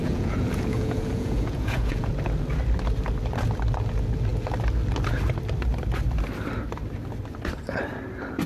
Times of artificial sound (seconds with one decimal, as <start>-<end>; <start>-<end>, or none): 0.0-2.1

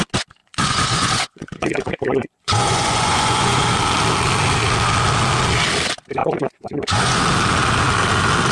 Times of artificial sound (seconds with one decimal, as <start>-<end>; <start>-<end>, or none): 0.4-3.7; 6.2-7.2

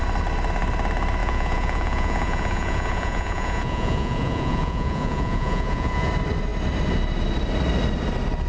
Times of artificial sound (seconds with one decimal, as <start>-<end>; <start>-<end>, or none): 1.2-6.1

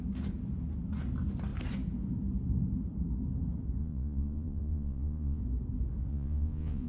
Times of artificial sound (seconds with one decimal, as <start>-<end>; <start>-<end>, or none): 3.8-5.4; 6.1-6.9

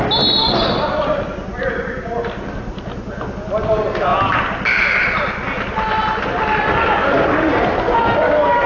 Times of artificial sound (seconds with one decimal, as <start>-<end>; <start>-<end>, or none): none

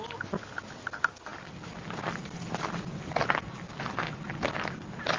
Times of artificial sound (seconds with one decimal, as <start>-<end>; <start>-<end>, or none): none